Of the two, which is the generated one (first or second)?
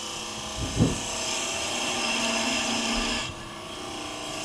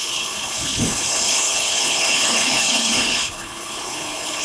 second